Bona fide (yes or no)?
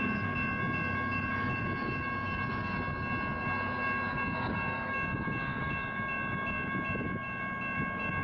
yes